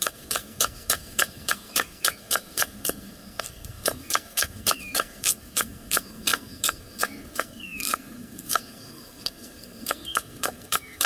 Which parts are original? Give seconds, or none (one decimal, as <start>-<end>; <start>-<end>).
none